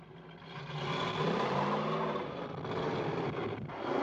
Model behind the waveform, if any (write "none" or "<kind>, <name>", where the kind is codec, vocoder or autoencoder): none